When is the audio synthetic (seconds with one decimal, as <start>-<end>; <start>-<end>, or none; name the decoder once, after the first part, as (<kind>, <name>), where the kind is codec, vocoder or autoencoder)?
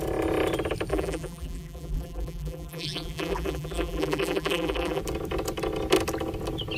0.9-5.0 (vocoder, BigVGAN v2)